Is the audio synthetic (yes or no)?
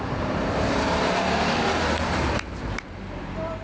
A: yes